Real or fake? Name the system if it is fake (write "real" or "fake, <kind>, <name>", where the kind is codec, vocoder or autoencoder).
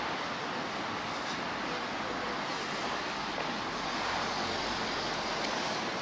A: real